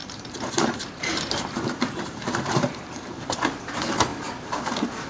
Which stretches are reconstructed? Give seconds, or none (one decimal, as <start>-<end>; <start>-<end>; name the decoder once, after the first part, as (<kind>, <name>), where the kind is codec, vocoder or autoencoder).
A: 0.0-5.1 (vocoder, BigVGAN v2)